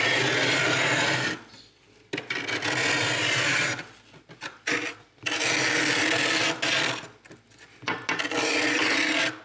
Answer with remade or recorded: recorded